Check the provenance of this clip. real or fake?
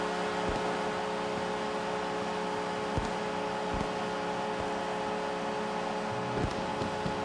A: real